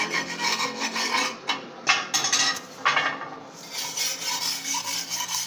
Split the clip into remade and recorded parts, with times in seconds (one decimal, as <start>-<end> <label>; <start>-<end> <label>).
0.0-1.1 remade; 1.1-4.4 recorded; 4.4-5.5 remade